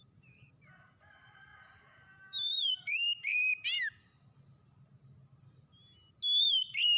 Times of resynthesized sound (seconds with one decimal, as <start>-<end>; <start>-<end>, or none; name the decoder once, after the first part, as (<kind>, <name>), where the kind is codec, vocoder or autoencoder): 0.0-3.5 (vocoder, BigVGAN v2); 6.4-7.0